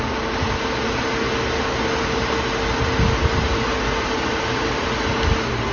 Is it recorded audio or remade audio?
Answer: recorded